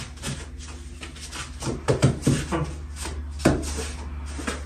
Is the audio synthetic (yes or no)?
no